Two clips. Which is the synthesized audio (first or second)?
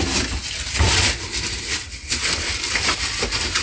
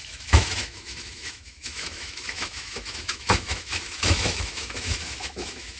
second